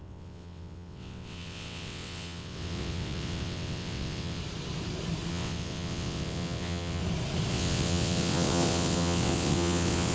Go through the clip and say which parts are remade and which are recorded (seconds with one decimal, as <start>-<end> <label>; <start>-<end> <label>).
0.0-4.4 remade; 4.4-5.3 recorded; 5.3-7.0 remade; 7.0-7.5 recorded; 7.5-10.1 remade